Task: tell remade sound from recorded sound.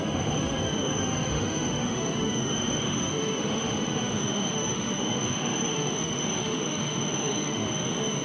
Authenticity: remade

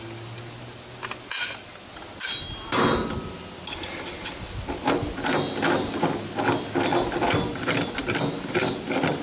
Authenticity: recorded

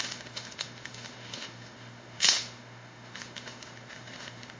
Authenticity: remade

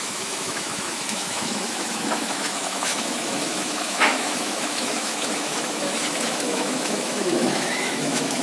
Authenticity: remade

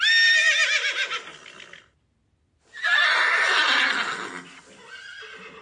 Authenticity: recorded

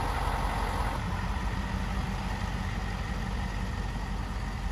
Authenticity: recorded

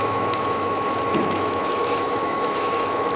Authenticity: remade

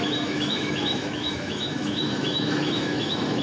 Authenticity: remade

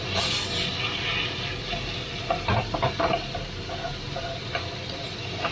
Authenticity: recorded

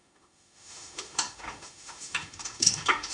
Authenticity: remade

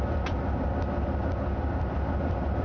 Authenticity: recorded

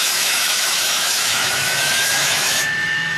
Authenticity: remade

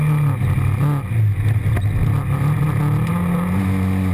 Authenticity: recorded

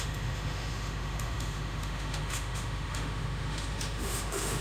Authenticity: remade